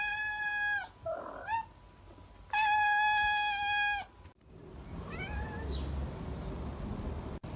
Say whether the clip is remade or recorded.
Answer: recorded